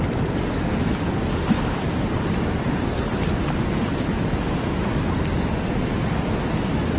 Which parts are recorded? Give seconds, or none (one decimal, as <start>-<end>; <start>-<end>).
0.0-4.8; 5.3-7.0